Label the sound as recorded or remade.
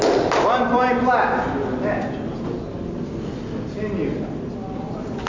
recorded